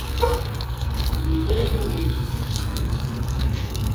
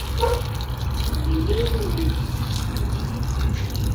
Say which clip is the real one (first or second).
second